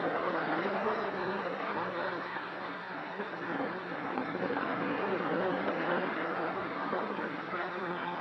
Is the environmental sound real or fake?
fake